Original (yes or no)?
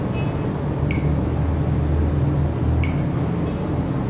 yes